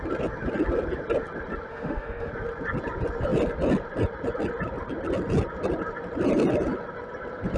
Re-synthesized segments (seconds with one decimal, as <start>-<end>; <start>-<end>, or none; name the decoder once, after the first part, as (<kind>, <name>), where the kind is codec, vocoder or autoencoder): 1.7-2.3 (autoencoder, DAC-VAE)